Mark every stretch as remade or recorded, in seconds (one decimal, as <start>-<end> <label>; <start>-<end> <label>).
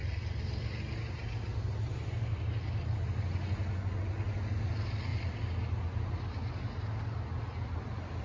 0.0-8.2 recorded